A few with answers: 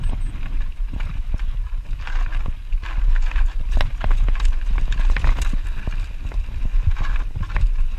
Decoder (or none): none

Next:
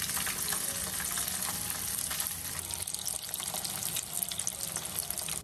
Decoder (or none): none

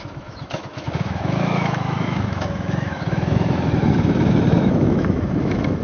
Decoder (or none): autoencoder, DAC-VAE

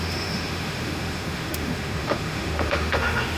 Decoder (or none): autoencoder, DAC-VAE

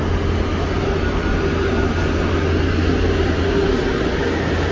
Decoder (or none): none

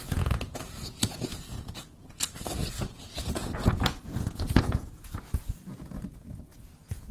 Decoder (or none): vocoder, Vocos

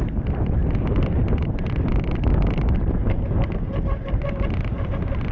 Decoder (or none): none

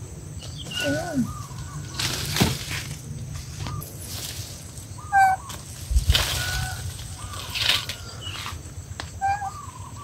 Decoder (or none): none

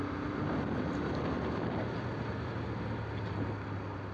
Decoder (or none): none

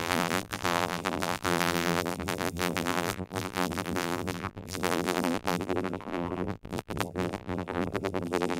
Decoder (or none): vocoder, BigVGAN v2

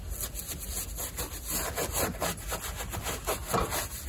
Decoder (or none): none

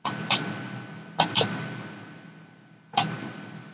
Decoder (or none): none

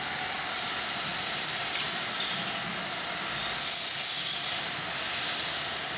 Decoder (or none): none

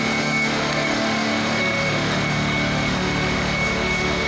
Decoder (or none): autoencoder, DAC-VAE